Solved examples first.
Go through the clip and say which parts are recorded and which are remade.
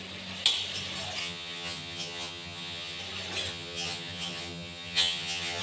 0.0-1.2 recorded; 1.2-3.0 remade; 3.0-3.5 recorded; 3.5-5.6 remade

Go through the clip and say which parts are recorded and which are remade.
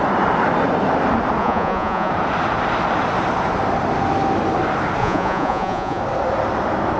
0.0-1.4 recorded; 1.4-2.1 remade; 2.1-5.0 recorded; 5.0-6.0 remade; 6.0-7.0 recorded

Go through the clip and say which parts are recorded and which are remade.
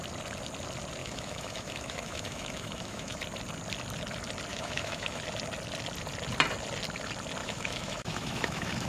0.0-1.0 recorded; 1.0-3.2 remade; 3.2-4.5 recorded; 4.5-5.2 remade; 5.2-7.4 recorded; 7.4-8.9 remade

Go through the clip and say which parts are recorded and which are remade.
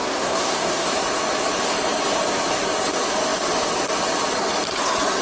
0.0-0.9 remade; 0.9-5.2 recorded